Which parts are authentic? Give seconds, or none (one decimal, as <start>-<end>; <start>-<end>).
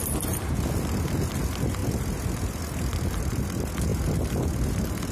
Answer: 0.0-5.1